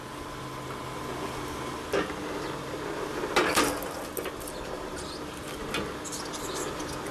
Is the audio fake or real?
real